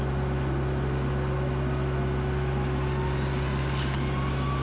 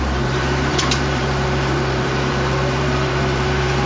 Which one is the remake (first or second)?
second